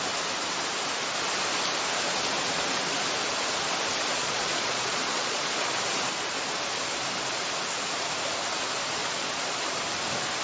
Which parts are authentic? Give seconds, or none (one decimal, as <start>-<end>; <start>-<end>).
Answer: 0.0-4.2; 5.5-9.0; 9.6-10.4